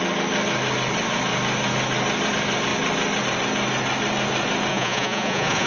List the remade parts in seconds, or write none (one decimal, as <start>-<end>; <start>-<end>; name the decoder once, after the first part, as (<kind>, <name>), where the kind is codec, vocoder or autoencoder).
4.7-5.7 (vocoder, Vocos)